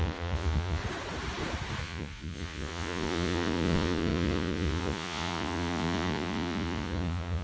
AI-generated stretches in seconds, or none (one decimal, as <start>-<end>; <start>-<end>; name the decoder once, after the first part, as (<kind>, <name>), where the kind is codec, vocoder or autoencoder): 0.0-0.8 (vocoder, Vocos); 1.8-7.4